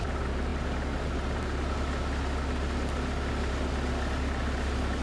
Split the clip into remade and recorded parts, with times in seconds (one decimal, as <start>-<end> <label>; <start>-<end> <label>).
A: 0.0-5.0 recorded